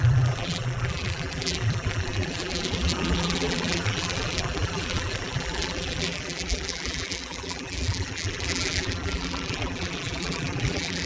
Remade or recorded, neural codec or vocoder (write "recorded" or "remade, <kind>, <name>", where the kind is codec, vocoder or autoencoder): remade, vocoder, BigVGAN v2